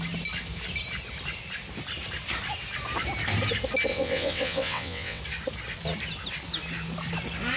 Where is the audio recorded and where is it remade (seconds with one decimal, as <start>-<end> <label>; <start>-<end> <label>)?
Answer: 0.0-3.9 recorded; 3.9-5.2 remade; 5.2-7.6 recorded